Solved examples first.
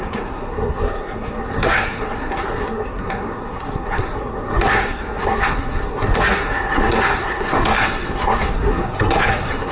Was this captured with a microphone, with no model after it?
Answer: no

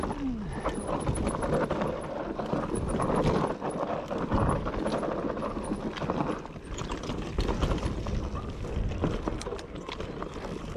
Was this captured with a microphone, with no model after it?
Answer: yes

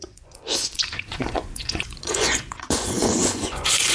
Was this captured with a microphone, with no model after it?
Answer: no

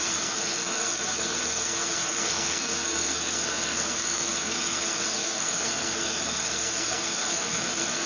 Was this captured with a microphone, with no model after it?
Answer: no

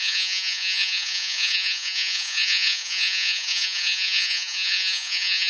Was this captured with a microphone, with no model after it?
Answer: no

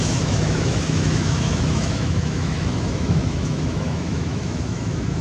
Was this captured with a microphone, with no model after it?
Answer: no